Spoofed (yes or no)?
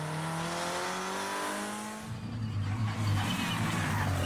no